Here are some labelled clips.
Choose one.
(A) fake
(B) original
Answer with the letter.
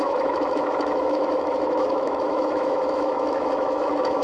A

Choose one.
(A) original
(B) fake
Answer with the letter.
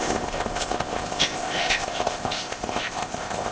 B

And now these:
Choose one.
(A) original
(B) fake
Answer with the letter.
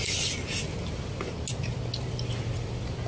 A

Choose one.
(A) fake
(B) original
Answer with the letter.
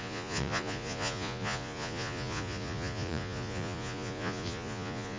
A